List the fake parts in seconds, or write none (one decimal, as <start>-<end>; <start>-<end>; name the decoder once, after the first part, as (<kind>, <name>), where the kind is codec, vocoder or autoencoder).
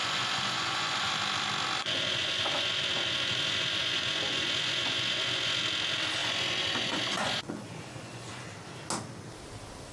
0.0-1.1 (vocoder, Vocos); 1.8-5.6; 6.2-8.4